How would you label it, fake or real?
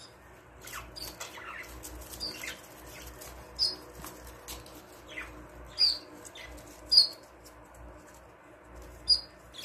real